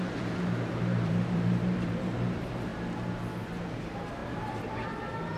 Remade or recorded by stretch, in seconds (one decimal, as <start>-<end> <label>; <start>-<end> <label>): 0.0-2.7 remade; 2.7-3.6 recorded; 3.6-5.4 remade